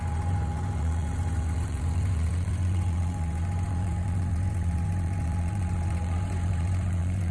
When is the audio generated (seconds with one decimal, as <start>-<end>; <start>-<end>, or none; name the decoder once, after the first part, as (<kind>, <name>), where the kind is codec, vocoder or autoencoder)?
0.0-7.3 (vocoder, Vocos)